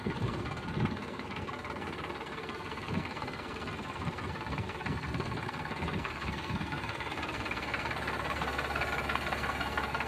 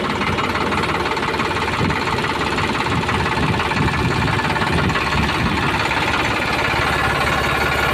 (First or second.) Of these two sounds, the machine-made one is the first